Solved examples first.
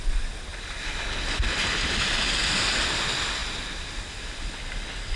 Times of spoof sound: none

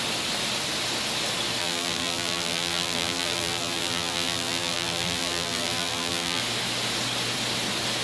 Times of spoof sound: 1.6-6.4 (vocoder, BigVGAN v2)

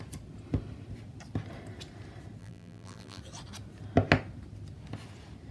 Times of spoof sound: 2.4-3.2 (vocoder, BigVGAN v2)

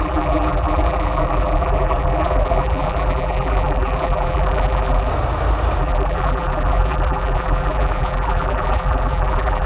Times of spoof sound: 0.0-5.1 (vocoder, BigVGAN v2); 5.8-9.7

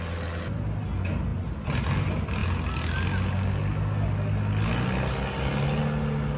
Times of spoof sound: none